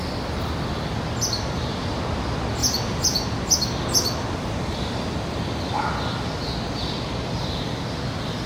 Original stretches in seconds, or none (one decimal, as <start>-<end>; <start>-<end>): 0.0-8.5